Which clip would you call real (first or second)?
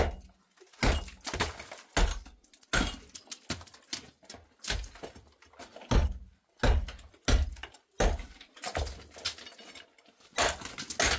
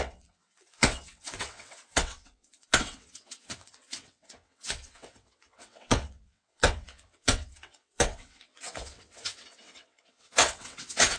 first